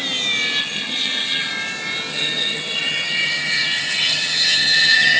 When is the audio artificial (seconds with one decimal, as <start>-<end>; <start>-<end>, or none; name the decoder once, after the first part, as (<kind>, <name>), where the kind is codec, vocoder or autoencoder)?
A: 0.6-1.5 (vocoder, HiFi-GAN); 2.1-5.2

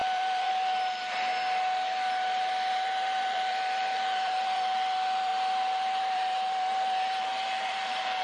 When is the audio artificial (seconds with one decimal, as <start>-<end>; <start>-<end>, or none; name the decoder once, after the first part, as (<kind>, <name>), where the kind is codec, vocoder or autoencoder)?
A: 0.0-1.3 (vocoder, BigVGAN v2); 2.7-5.3; 5.8-8.2

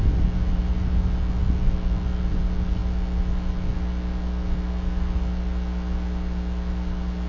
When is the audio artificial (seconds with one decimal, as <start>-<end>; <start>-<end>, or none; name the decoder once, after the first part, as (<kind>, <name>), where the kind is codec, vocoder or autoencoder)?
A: none

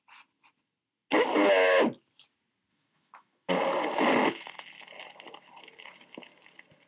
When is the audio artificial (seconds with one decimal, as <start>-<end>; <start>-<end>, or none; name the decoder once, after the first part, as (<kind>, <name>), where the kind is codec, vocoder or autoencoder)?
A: 2.7-3.5 (autoencoder, DAC-VAE)